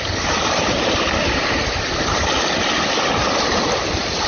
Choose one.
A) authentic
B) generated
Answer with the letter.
A